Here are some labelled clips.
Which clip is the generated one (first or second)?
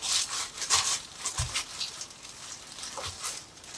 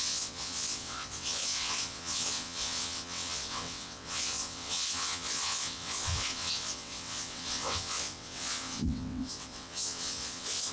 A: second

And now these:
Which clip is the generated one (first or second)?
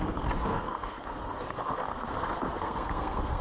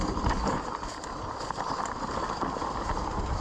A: first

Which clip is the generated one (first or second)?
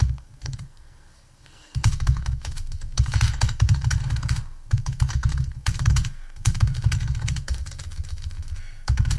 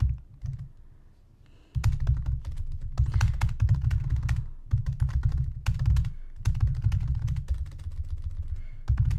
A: first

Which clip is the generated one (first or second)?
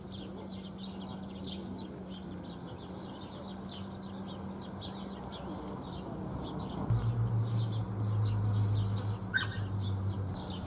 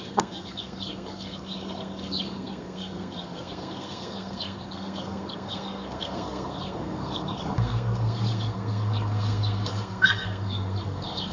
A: second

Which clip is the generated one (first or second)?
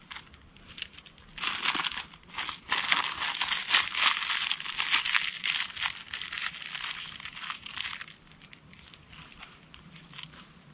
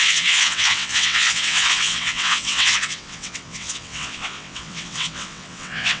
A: second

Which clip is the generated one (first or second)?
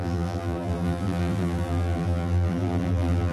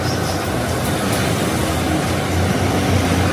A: first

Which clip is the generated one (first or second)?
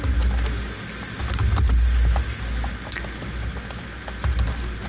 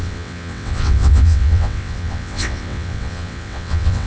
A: second